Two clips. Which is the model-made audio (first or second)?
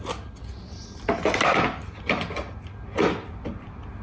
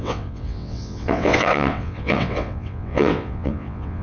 second